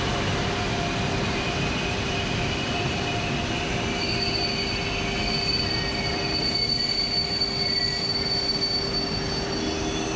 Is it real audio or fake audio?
real